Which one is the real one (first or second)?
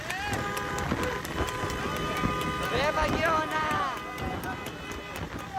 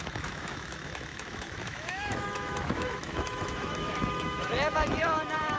first